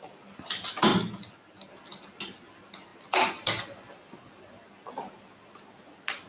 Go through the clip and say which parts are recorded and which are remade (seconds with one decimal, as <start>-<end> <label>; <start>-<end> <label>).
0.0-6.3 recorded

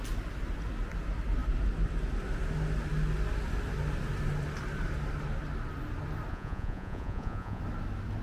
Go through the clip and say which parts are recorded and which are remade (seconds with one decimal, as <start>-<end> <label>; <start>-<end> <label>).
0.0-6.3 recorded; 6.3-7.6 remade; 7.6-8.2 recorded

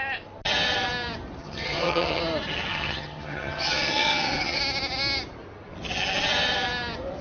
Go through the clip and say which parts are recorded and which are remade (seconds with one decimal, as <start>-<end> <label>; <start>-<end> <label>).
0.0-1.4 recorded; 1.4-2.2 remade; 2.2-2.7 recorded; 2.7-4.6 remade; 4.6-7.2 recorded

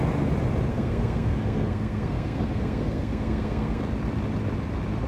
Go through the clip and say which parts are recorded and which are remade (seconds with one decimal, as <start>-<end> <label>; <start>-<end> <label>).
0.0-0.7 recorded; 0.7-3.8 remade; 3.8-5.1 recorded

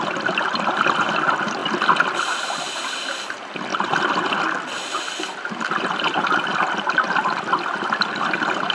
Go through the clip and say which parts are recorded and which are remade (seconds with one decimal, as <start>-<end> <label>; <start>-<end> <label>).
0.0-1.6 remade; 1.6-2.3 recorded; 2.3-3.7 remade; 3.7-8.2 recorded; 8.2-8.7 remade

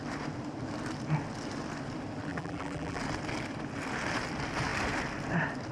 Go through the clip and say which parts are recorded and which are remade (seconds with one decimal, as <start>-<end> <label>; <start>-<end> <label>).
0.0-2.3 recorded; 2.3-3.0 remade; 3.0-5.7 recorded

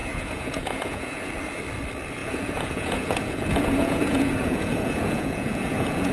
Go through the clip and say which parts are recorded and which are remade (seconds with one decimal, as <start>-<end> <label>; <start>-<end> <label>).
0.0-1.3 remade; 1.3-2.2 recorded; 2.2-6.1 remade